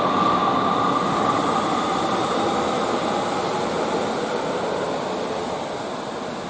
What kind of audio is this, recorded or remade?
recorded